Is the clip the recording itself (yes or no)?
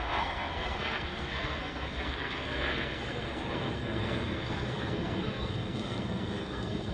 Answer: no